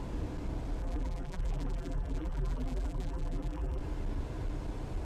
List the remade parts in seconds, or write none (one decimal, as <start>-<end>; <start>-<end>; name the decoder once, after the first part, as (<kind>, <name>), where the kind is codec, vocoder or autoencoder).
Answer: 0.8-3.8 (vocoder, BigVGAN v2)